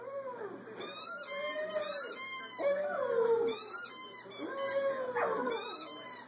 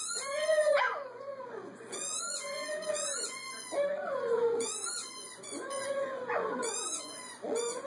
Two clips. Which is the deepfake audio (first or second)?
second